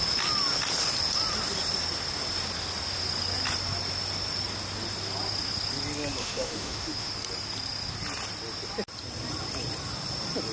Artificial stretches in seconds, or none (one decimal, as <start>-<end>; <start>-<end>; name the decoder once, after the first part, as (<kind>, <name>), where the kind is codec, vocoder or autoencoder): 6.2-7.1 (autoencoder, DAC-VAE)

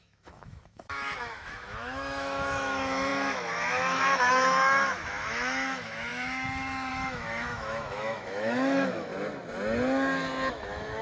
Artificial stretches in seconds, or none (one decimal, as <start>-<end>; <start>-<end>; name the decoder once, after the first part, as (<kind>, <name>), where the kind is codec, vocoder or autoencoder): 0.0-9.1 (autoencoder, DAC-VAE); 10.5-11.0